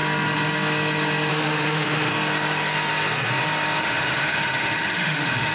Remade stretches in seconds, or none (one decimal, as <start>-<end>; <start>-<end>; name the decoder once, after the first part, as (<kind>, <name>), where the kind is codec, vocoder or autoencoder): 1.3-2.1 (autoencoder, DAC-VAE); 3.8-5.5